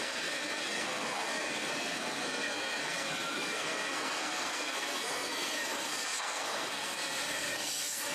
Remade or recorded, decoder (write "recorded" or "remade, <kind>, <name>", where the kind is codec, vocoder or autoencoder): remade, codec, SNAC